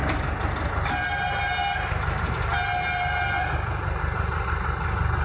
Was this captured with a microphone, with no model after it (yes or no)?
yes